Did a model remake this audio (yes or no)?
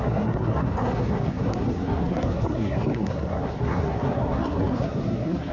yes